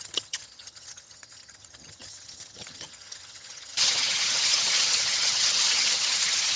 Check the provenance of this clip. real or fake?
fake